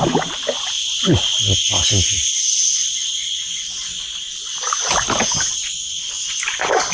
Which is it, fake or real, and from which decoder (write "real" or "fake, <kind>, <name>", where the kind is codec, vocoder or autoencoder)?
real